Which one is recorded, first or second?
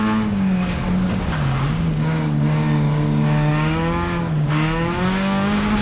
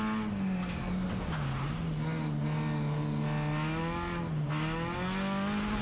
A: second